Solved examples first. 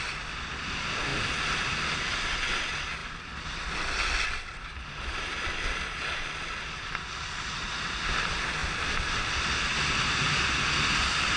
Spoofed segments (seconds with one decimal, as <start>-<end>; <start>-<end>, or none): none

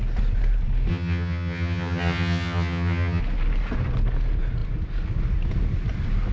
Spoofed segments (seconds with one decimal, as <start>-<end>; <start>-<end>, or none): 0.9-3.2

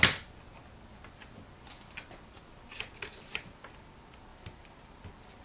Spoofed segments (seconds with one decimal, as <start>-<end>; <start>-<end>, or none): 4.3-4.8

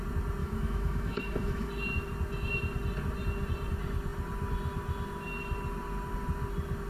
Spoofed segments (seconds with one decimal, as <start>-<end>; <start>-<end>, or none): 0.4-1.7

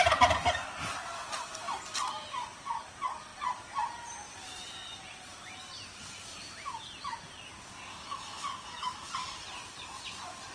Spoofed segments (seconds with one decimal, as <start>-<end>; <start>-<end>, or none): 7.9-9.1

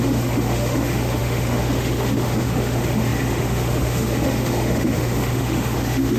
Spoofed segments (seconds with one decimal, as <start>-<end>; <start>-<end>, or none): 0.0-6.2

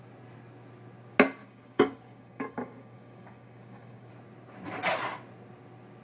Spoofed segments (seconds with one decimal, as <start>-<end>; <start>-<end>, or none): 1.4-4.1

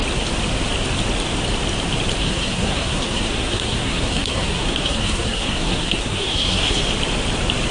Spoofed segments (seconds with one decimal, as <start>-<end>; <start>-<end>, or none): 2.2-6.8